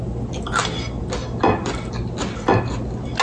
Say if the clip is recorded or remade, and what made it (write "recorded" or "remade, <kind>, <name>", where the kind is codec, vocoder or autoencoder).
recorded